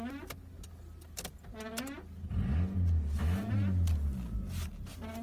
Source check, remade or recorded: recorded